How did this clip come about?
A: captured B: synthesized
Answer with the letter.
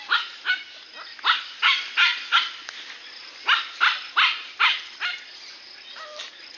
A